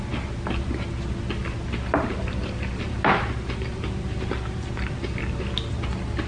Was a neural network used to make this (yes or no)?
no